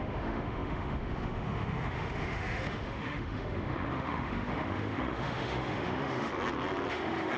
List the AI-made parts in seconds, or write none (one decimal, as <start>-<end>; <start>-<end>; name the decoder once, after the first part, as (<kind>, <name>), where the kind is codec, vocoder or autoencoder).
0.0-6.3 (autoencoder, DAC-VAE); 6.9-7.4

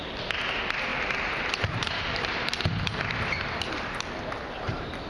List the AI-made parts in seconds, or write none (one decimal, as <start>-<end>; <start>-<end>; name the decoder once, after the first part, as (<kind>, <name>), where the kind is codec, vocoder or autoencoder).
0.9-4.0 (vocoder, BigVGAN v2)

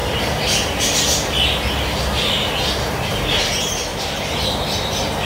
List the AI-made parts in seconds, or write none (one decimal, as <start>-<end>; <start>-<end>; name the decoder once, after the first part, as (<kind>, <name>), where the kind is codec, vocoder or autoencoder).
3.9-4.6 (vocoder, BigVGAN v2)